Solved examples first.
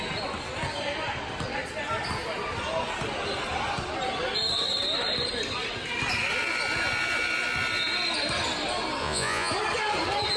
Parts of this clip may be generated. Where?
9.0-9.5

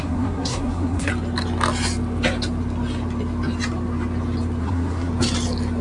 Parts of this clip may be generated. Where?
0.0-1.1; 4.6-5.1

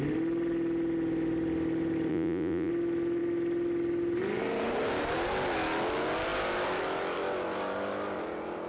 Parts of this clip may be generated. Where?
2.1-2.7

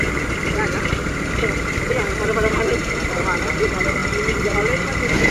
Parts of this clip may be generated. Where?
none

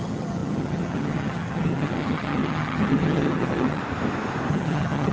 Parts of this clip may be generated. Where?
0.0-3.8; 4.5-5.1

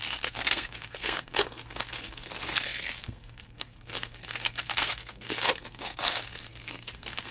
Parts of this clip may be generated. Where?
0.0-7.3